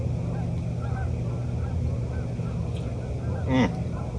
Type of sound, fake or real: real